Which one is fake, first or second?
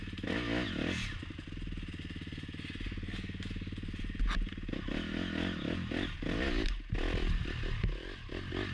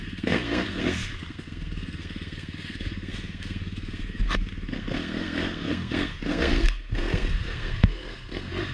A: second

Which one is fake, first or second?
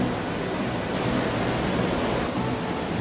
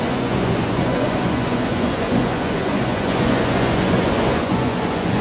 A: second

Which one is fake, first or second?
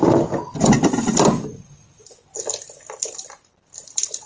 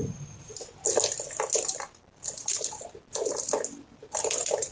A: first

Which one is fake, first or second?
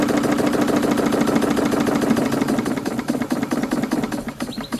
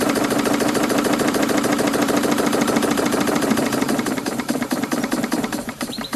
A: second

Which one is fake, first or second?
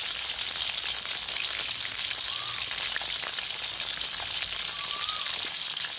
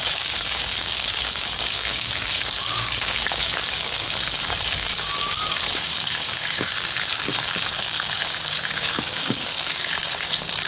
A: second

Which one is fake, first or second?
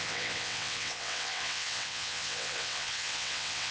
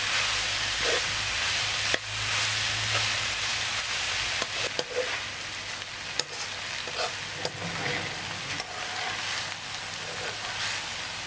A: first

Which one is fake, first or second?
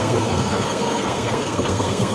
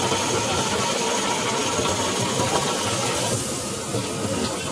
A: first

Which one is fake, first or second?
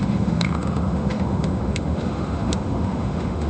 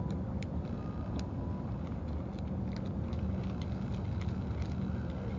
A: first